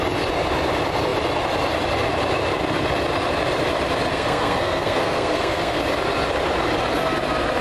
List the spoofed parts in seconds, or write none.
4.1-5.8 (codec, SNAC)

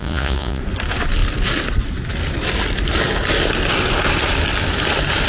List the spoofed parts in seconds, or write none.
0.0-0.6 (vocoder, Vocos)

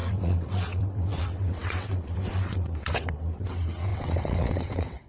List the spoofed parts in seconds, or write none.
0.0-5.1 (vocoder, WaveNeXt)

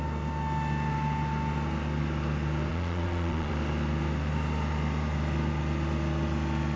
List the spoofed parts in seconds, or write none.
2.7-3.5 (vocoder, Vocos)

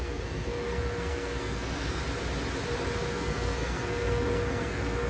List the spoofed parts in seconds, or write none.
0.0-2.0 (codec, SNAC); 3.1-5.1